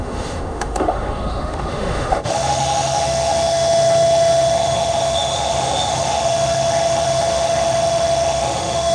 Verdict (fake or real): fake